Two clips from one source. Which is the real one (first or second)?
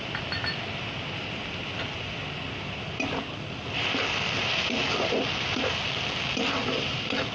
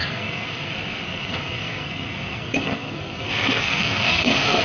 first